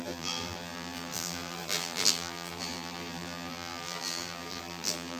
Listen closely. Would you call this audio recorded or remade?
remade